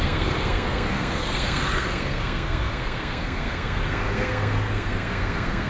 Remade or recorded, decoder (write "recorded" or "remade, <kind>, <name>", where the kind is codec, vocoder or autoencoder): remade, codec, SNAC